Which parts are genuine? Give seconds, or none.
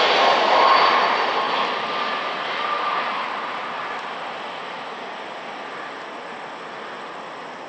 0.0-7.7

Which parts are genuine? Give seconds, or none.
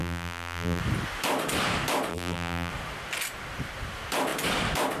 0.8-2.1; 2.7-5.0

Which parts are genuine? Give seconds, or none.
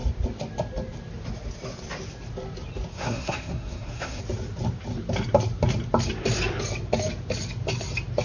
0.0-2.9; 4.2-8.2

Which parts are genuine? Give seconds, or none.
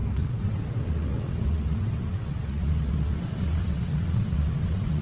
none